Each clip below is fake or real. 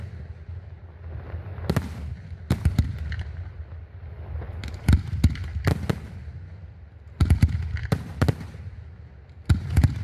real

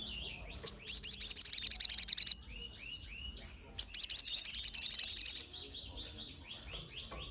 real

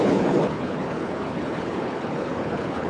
fake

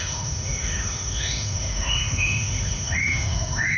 fake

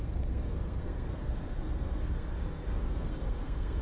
fake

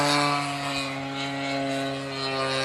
real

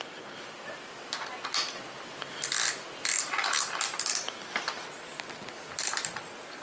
real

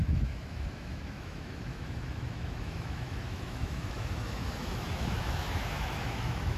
fake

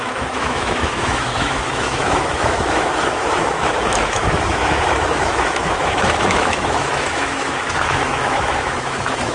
fake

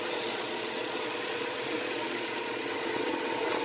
fake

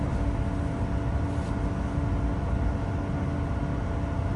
real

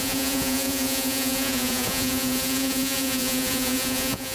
fake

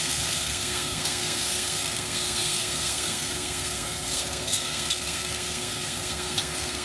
fake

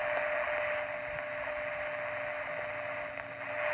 real